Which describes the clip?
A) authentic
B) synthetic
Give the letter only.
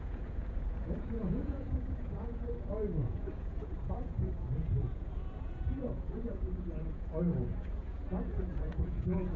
B